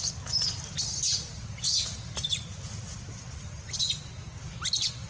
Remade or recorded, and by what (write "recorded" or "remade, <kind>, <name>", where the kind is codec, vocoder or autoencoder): recorded